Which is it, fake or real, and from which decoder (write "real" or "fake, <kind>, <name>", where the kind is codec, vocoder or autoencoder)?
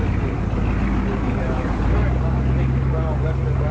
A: real